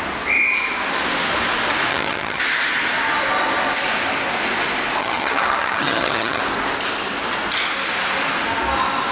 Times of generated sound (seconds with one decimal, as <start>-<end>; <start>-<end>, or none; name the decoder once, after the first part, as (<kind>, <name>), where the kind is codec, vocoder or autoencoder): 1.9-2.4 (vocoder, HiFi-GAN); 5.0-6.4